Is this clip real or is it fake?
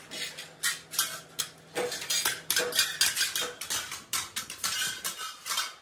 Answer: real